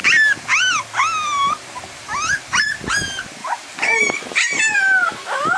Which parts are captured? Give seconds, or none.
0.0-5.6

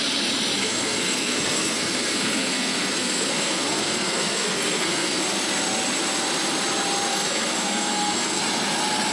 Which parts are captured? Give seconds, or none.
0.0-0.6; 5.2-7.1; 8.4-9.1

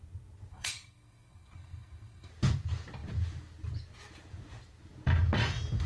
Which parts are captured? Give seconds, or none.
0.0-0.5; 2.3-5.9

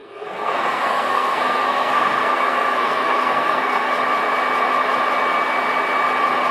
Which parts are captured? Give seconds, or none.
3.9-6.5

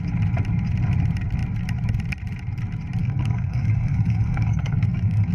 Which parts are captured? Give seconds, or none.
0.0-3.0